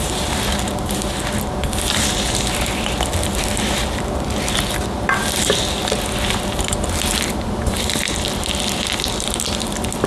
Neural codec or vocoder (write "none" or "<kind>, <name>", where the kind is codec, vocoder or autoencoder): none